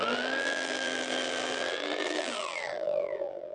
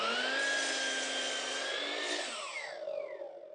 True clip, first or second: second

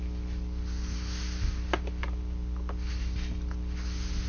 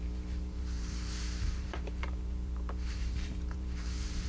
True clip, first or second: first